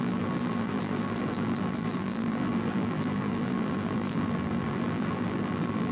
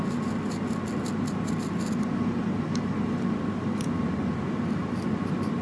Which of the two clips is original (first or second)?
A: second